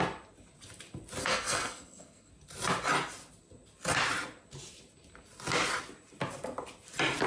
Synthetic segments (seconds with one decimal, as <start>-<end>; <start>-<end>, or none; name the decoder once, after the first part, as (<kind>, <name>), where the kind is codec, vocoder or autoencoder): 1.2-2.3 (codec, SNAC)